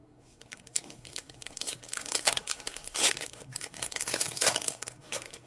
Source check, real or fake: fake